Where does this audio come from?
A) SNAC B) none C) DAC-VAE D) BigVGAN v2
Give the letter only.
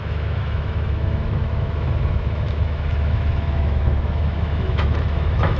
C